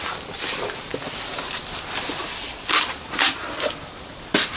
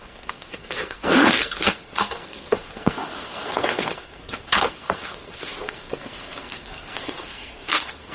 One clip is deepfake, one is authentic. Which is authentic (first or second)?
first